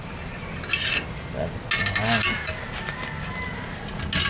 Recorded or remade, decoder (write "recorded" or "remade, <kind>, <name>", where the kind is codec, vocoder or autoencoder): recorded